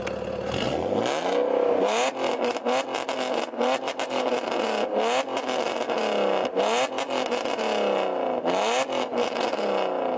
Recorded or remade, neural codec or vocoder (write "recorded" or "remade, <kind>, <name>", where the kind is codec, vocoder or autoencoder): recorded